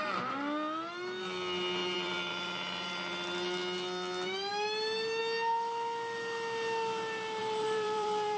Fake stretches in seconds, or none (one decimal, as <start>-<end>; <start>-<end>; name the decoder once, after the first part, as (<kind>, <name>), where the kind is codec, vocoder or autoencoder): 1.8-2.3 (vocoder, BigVGAN v2); 7.4-8.4